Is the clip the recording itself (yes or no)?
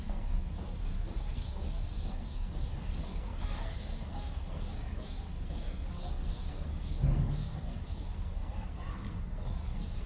no